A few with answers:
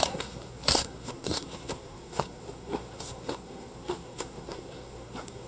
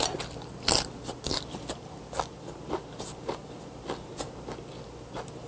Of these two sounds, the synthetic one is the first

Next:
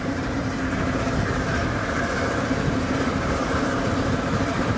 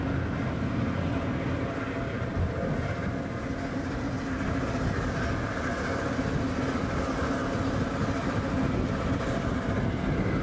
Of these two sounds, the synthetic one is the first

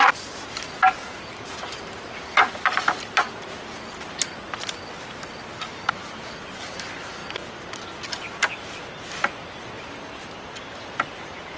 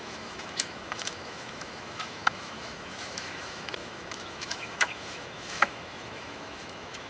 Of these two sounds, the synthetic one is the second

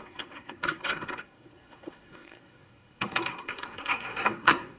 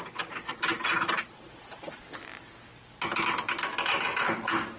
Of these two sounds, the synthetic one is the first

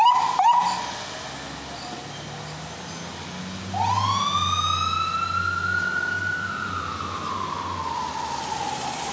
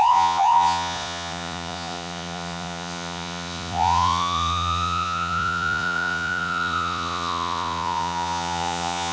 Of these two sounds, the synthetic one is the second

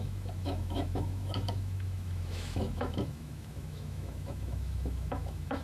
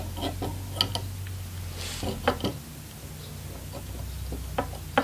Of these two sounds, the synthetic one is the first